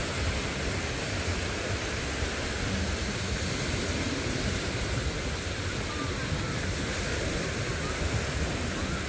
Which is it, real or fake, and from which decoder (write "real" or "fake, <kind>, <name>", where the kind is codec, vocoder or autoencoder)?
real